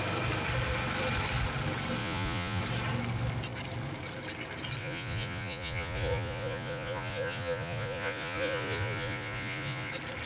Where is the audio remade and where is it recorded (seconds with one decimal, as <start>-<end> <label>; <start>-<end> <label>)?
0.0-2.0 recorded; 2.0-2.6 remade; 2.6-4.8 recorded; 4.8-9.9 remade; 9.9-10.3 recorded